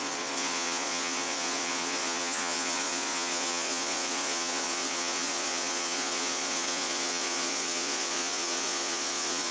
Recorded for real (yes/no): no